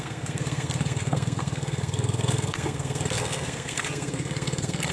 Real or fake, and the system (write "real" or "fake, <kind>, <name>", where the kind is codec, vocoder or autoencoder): fake, codec, SNAC